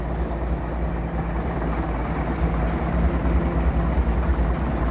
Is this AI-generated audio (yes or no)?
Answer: no